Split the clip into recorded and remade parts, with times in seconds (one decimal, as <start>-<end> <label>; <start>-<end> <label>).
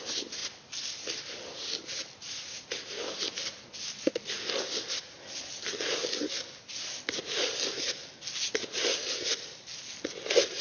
0.0-10.6 recorded